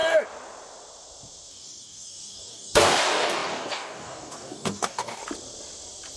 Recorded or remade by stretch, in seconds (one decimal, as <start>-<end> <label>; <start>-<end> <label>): 0.0-1.5 recorded; 1.5-5.2 remade; 5.2-6.2 recorded